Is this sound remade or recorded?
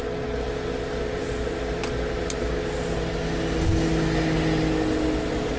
recorded